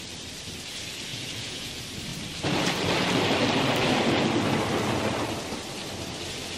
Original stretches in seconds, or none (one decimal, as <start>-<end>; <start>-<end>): 0.0-1.1; 1.7-6.6